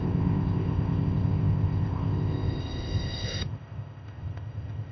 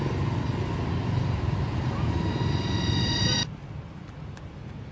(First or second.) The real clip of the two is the second